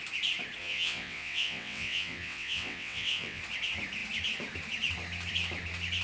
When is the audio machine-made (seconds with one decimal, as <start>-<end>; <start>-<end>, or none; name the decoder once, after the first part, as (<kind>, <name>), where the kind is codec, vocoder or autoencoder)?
0.6-3.4 (vocoder, WaveNeXt)